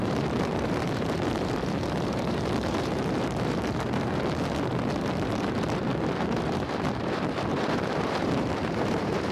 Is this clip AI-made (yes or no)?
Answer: yes